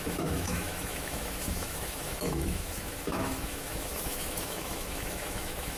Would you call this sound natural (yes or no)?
no